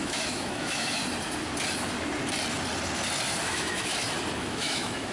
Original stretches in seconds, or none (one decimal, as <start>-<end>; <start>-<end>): 1.0-3.4; 3.9-4.4